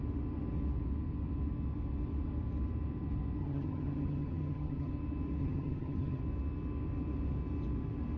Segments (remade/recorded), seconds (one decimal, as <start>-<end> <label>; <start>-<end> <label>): 0.0-3.4 recorded; 3.4-4.9 remade; 4.9-5.4 recorded; 5.4-6.2 remade; 6.2-8.2 recorded